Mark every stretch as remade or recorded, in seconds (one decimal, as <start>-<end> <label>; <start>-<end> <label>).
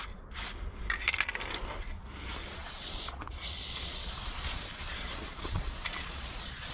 0.0-2.4 recorded; 2.4-6.7 remade